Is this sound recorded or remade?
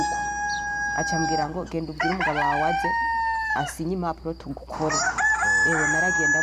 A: recorded